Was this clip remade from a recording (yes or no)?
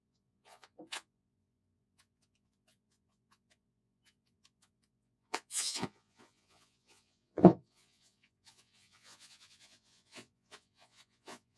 yes